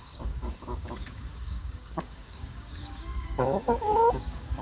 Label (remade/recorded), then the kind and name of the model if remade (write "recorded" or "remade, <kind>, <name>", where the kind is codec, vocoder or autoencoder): remade, codec, DAC